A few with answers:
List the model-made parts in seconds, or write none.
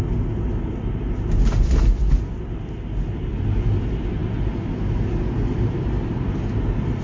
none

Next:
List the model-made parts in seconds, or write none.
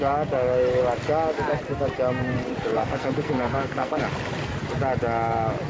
2.7-4.0 (codec, SNAC)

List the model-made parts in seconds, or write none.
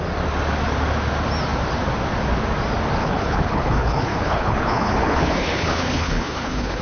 3.0-6.8 (codec, HILCodec)